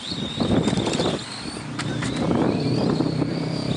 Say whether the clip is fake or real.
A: fake